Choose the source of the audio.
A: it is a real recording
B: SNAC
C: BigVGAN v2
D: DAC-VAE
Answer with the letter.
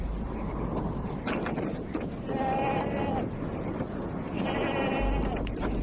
C